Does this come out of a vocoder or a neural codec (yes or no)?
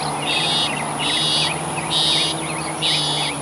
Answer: no